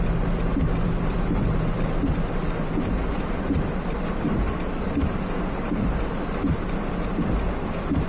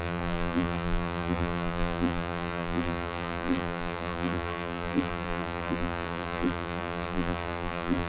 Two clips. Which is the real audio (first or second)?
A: first